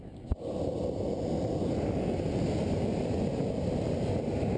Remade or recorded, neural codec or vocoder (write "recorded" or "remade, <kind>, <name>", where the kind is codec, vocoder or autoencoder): recorded